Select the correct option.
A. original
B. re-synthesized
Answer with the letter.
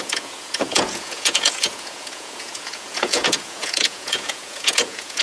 B